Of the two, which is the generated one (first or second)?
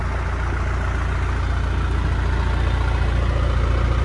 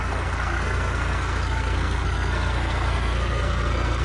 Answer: second